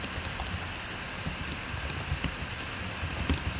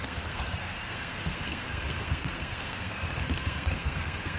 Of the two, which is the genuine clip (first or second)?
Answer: first